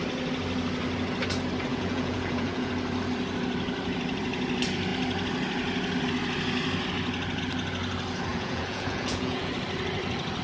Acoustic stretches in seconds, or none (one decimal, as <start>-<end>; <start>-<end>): 0.0-1.7; 2.7-8.3; 9.5-10.4